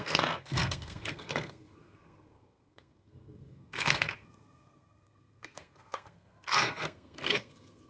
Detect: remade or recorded remade